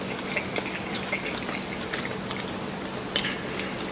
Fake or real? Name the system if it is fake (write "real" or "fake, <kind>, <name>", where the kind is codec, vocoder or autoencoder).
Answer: real